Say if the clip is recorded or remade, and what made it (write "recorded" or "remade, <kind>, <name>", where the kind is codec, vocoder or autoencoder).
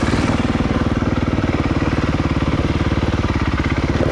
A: recorded